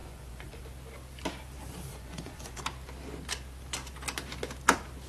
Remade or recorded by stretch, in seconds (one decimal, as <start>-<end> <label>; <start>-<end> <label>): 0.0-0.6 remade; 0.6-1.9 recorded; 1.9-2.6 remade; 2.6-5.1 recorded